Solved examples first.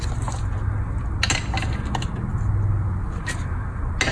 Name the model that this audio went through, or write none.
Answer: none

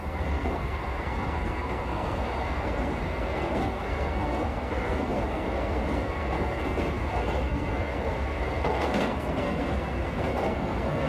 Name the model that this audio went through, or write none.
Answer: codec, SNAC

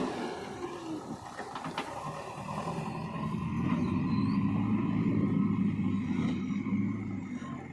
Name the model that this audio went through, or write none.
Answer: none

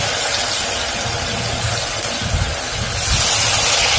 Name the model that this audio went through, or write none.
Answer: none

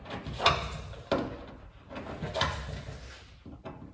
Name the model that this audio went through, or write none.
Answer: none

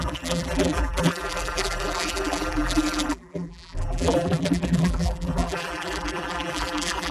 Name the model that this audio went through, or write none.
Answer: vocoder, BigVGAN v2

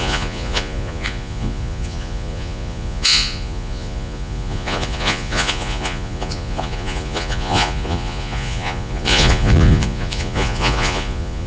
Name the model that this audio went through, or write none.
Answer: vocoder, Vocos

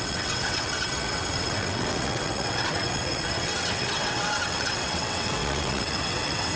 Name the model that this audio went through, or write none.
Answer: vocoder, WaveNeXt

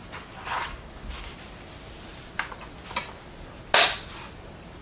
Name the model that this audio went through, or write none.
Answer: none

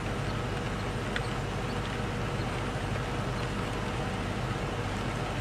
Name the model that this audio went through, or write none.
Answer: none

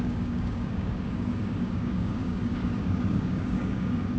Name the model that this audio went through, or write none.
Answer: codec, DAC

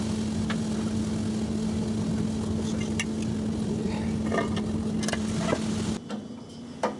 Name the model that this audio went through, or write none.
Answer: none